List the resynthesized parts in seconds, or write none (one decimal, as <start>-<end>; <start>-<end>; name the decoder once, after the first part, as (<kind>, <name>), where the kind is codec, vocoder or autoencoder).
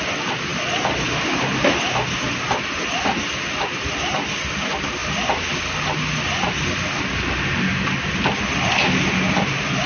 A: none